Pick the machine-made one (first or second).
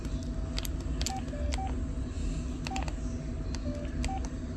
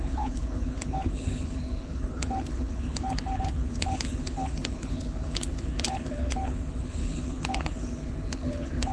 second